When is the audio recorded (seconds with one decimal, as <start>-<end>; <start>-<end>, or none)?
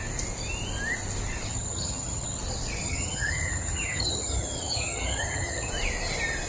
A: 0.0-1.5; 2.4-2.8; 5.7-6.5